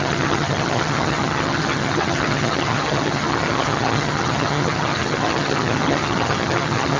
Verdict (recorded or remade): remade